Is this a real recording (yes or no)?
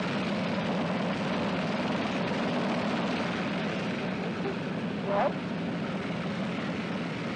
yes